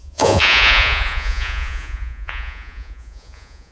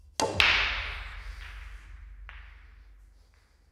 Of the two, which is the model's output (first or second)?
first